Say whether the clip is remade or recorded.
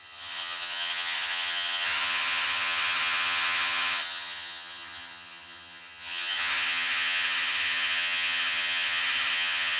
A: remade